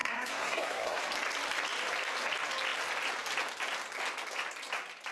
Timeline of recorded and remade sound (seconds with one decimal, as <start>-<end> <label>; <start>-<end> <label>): 0.0-1.0 remade; 1.0-5.1 recorded